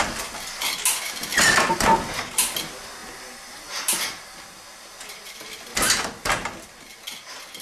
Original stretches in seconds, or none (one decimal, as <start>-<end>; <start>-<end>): 0.0-7.6